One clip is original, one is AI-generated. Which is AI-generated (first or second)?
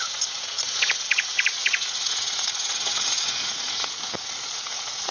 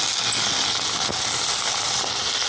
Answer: first